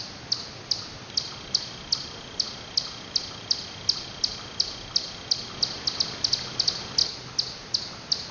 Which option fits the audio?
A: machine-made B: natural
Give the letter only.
B